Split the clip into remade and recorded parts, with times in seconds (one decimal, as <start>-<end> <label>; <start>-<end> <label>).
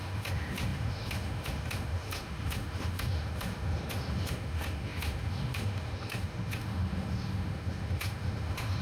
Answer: 0.0-8.8 remade